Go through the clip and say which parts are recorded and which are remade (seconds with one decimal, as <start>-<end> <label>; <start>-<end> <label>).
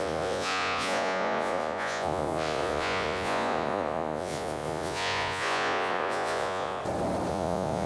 0.0-6.8 remade; 6.8-7.3 recorded; 7.3-7.9 remade